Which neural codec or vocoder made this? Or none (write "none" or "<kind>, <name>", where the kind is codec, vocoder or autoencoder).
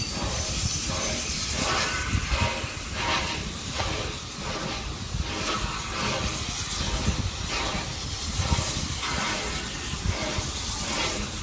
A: none